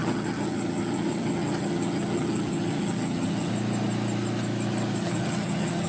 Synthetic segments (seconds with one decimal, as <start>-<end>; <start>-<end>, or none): 0.0-3.5; 5.0-5.9